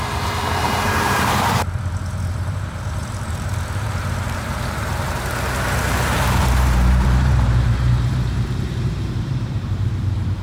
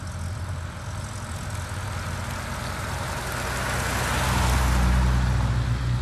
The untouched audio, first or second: second